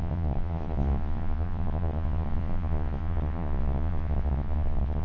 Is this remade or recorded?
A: remade